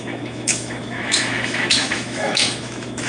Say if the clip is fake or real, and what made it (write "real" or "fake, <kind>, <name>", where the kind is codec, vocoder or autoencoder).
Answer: fake, autoencoder, DAC-VAE